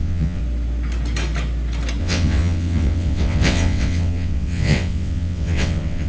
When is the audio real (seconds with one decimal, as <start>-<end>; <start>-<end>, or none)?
0.4-2.0